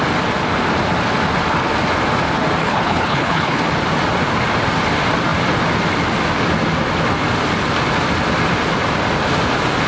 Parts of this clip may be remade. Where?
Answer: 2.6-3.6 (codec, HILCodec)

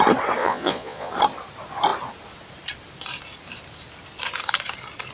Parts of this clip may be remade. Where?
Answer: 0.4-1.1 (vocoder, Vocos)

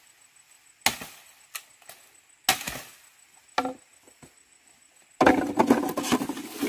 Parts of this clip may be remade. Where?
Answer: none

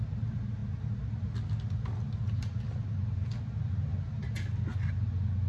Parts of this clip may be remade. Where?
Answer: none

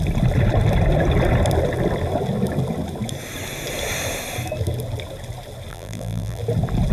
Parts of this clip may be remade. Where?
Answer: 5.7-6.4 (vocoder, BigVGAN v2)

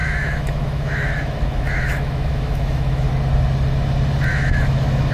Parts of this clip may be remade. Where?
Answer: 0.0-3.1 (autoencoder, DAC-VAE); 4.3-5.1